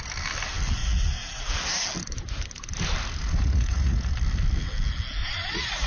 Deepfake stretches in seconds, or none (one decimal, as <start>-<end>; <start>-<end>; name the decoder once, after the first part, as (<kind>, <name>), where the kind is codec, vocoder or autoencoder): 0.8-1.5 (vocoder, Vocos); 3.2-4.1; 5.2-5.9